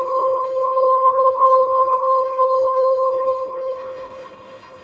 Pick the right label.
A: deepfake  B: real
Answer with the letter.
A